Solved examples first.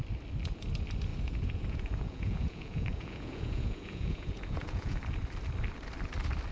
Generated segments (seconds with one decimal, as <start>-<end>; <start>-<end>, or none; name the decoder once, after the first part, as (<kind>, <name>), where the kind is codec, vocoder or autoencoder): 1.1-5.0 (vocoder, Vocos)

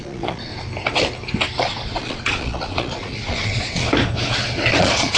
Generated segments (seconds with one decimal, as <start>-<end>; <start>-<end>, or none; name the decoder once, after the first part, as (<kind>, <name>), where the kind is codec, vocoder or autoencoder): 0.0-0.5 (vocoder, Vocos); 1.6-3.8; 4.8-5.2

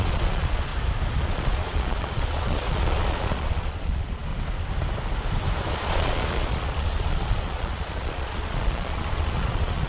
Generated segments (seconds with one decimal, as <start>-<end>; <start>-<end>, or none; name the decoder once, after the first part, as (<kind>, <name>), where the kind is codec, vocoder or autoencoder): 0.0-0.7 (vocoder, Vocos); 1.2-4.3; 5.7-9.9